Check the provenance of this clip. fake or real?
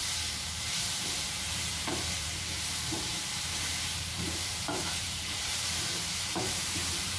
fake